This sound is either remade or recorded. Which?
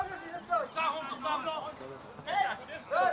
recorded